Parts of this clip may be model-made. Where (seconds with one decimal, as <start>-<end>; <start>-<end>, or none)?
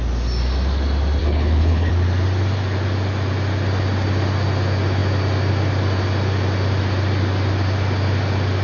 1.2-1.9